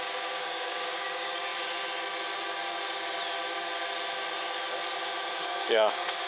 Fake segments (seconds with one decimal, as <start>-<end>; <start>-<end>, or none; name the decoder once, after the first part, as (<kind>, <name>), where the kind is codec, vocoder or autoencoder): 0.0-1.5 (codec, DAC); 5.3-6.3